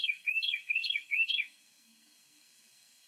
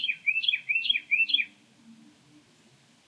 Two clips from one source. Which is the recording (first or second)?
second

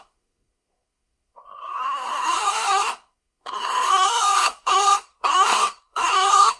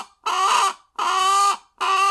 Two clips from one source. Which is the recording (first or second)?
second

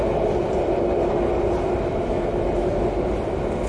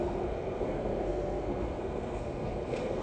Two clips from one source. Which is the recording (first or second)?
first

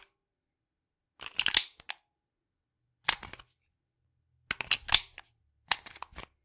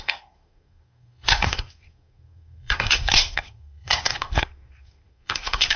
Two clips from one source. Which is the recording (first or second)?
first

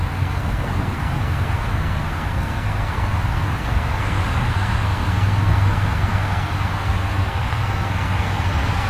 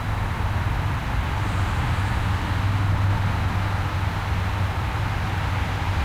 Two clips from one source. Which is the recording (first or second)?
second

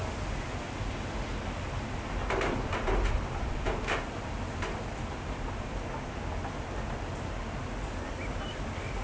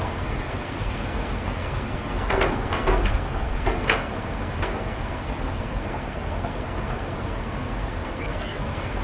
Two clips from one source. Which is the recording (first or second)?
first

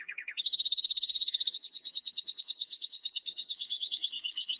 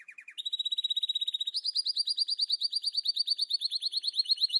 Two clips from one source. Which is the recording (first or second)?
second